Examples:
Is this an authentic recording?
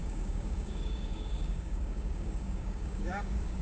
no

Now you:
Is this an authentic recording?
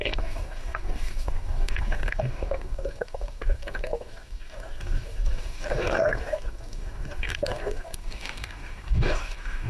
no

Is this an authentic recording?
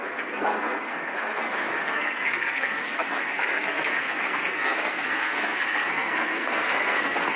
no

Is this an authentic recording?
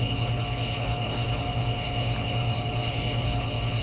no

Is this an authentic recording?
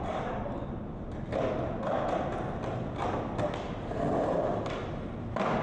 yes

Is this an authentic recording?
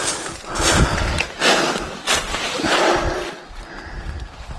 yes